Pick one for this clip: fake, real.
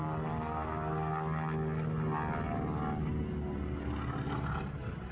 real